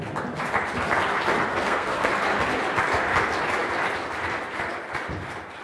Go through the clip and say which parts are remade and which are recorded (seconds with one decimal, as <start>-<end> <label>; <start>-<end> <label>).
0.0-1.5 recorded; 1.5-2.1 remade; 2.1-5.6 recorded